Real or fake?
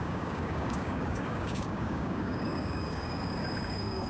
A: fake